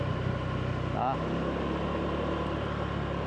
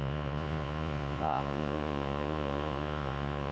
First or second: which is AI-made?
second